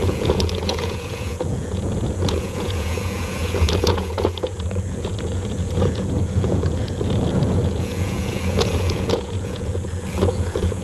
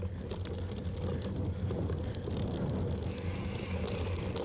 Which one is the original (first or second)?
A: second